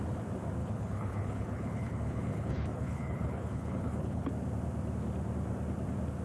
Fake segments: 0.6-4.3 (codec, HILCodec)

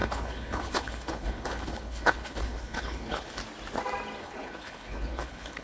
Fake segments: 0.0-3.4 (codec, HILCodec); 4.2-5.6

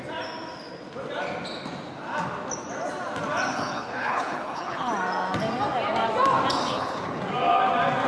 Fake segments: 3.5-4.9 (codec, HILCodec); 6.6-7.2

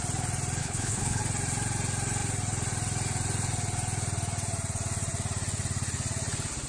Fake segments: 0.6-1.2 (codec, HILCodec)

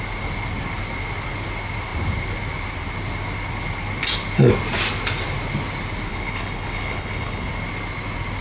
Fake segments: 6.1-7.5 (codec, HILCodec)

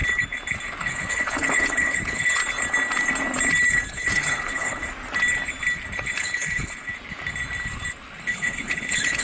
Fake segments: 0.8-2.4 (codec, HILCodec); 3.9-4.8; 6.2-6.9; 8.2-9.2